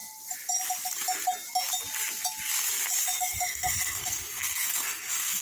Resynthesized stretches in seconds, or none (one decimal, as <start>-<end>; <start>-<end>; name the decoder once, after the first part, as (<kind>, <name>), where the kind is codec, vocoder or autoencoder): 3.2-5.4 (codec, SNAC)